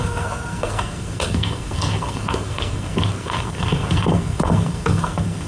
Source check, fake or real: fake